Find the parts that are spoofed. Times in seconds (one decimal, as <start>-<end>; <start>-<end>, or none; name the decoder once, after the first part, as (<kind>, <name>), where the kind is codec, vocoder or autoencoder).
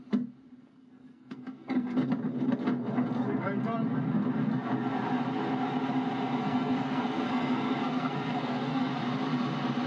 0.6-2.1 (codec, SNAC); 6.4-8.9